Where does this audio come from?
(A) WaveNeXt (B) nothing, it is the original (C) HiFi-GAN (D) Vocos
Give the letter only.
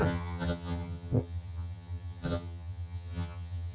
C